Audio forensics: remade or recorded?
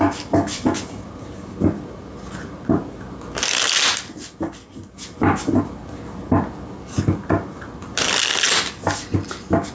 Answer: recorded